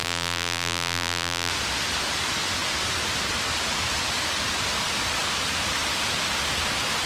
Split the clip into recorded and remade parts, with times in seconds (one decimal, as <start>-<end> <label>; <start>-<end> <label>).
0.0-1.5 remade; 1.5-7.1 recorded